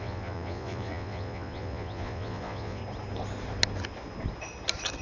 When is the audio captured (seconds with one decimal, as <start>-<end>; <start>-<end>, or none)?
2.8-5.0